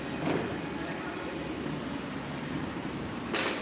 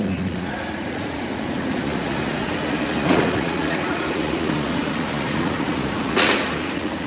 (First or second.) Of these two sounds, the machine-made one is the second